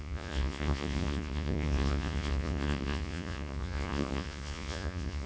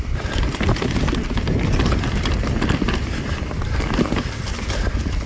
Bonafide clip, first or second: second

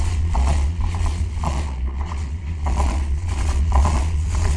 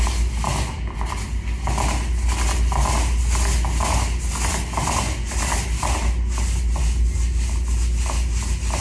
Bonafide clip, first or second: second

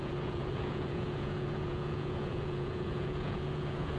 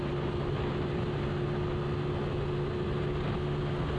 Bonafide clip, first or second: second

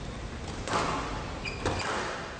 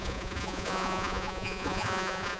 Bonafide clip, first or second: first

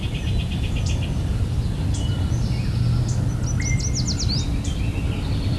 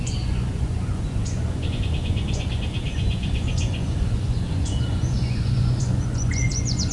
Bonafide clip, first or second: first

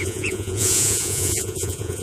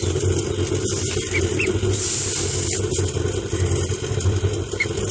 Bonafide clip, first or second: second